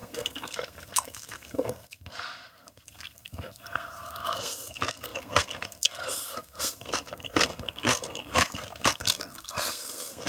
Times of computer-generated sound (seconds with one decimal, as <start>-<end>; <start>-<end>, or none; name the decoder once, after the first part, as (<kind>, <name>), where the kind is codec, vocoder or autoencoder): 0.0-10.3 (codec, SNAC)